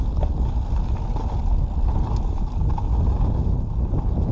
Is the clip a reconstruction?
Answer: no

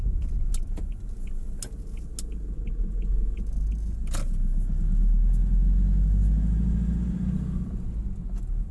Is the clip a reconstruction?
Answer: no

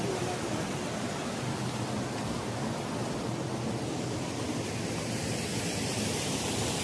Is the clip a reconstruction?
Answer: no